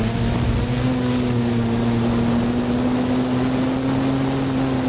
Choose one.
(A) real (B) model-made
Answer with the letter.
A